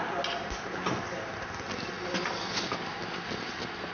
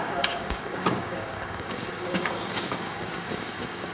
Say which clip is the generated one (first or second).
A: second